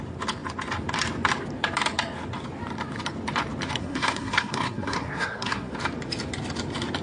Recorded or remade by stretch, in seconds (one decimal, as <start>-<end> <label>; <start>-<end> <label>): 0.0-3.8 recorded; 3.8-5.7 remade; 5.7-7.0 recorded